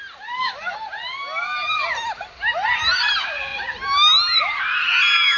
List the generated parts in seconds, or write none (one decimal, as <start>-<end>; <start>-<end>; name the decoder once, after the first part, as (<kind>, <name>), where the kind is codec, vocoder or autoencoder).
none